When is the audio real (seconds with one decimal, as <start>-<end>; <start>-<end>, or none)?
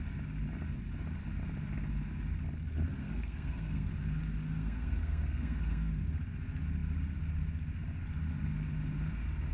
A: 0.0-3.0; 3.9-4.6; 5.9-9.5